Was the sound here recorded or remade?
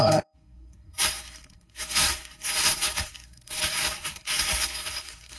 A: remade